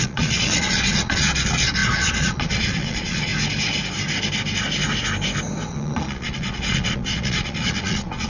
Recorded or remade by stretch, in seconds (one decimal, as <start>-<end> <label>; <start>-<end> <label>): 0.0-3.3 remade; 3.3-5.7 recorded; 5.7-8.3 remade